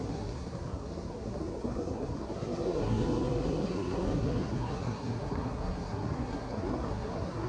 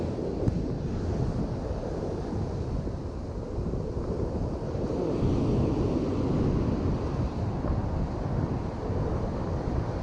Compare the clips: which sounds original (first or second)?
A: second